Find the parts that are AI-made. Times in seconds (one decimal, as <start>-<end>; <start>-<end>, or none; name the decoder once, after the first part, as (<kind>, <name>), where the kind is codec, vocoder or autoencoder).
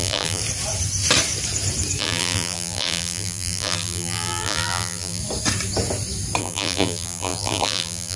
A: 0.0-0.4 (vocoder, BigVGAN v2); 2.0-5.2; 6.4-8.2